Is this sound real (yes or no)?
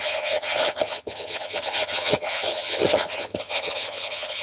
no